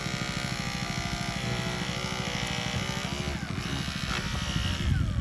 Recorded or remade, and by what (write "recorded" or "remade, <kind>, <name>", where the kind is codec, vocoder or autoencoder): recorded